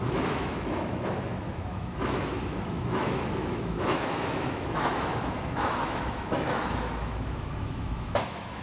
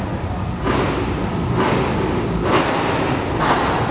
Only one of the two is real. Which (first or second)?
second